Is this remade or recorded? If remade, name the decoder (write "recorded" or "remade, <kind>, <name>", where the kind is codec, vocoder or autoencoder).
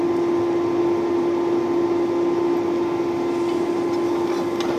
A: recorded